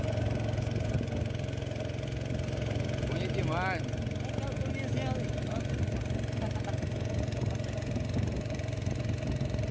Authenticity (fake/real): real